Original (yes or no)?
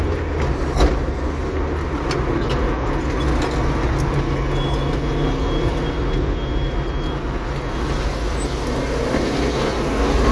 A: yes